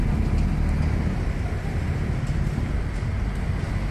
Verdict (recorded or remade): recorded